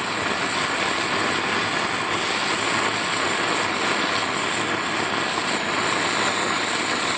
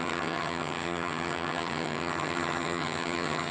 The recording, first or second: first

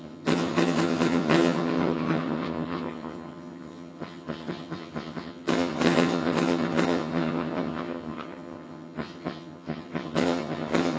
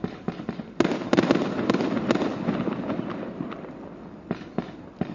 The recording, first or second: second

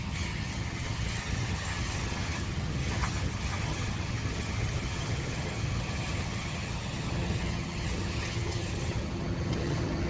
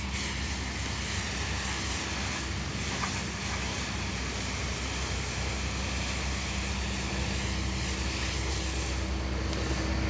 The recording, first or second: second